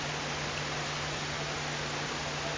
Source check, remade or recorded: recorded